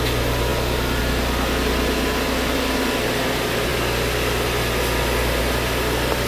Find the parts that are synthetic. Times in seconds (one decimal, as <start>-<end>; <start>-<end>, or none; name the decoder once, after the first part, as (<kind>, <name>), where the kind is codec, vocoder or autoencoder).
none